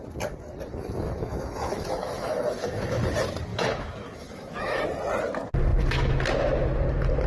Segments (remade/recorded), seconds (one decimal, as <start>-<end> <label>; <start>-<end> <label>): 0.0-0.7 recorded; 0.7-3.0 remade; 3.0-3.5 recorded; 3.5-4.8 remade; 4.8-7.3 recorded